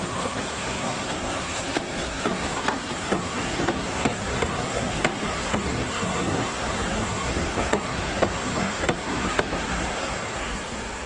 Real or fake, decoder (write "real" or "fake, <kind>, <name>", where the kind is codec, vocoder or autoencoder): fake, codec, SNAC